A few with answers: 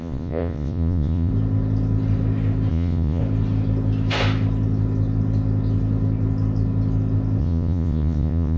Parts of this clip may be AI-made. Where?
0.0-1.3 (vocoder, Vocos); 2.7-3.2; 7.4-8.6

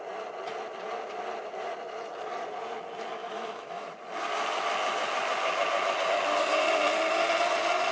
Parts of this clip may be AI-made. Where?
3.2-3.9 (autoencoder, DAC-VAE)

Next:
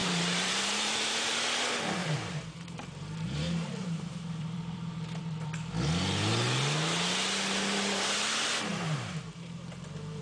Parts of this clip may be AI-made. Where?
0.0-1.2 (vocoder, BigVGAN v2); 2.0-5.5

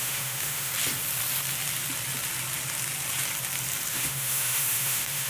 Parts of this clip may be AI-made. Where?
0.0-0.7 (autoencoder, DAC-VAE); 3.9-5.3

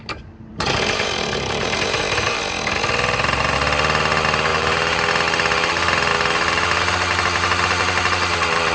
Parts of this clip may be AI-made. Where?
0.5-2.4 (vocoder, BigVGAN v2); 4.5-5.1